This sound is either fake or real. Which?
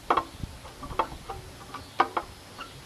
real